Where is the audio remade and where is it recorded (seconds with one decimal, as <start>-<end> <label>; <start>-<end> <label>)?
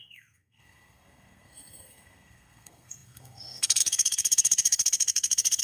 0.0-5.6 remade